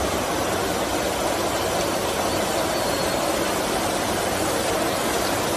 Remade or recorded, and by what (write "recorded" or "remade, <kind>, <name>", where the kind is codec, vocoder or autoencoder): recorded